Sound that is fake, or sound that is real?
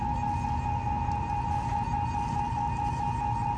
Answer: real